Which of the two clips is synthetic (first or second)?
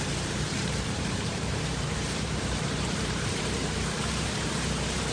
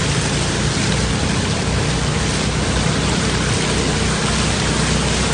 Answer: first